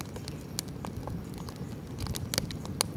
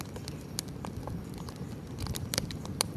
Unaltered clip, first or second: first